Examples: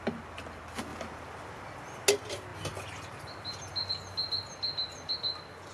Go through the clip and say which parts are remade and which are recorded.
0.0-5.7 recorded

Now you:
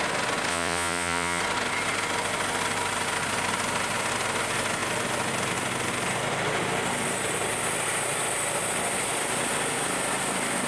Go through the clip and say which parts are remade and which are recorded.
0.0-0.5 recorded; 0.5-1.4 remade; 1.4-10.7 recorded

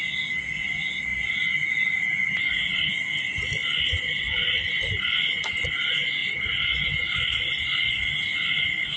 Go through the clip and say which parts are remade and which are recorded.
0.0-9.0 recorded

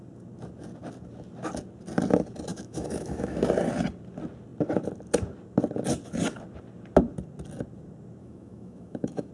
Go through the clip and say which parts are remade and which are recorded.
0.0-2.5 recorded; 2.5-3.4 remade; 3.4-8.2 recorded; 8.2-9.3 remade

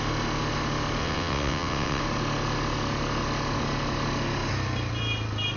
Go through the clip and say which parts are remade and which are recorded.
0.0-1.0 recorded; 1.0-2.0 remade; 2.0-5.6 recorded

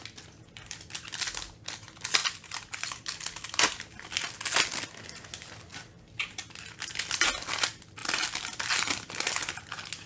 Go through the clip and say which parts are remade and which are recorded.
0.0-2.2 recorded; 2.2-2.9 remade; 2.9-5.7 recorded; 5.7-6.3 remade; 6.3-8.0 recorded; 8.0-9.7 remade; 9.7-10.1 recorded

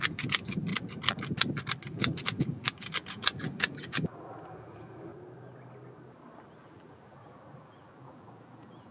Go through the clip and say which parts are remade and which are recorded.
0.0-0.7 remade; 0.7-1.9 recorded; 1.9-5.1 remade; 5.1-6.6 recorded; 6.6-8.9 remade